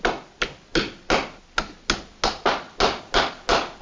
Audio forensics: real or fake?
real